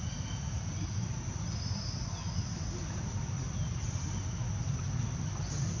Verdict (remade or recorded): recorded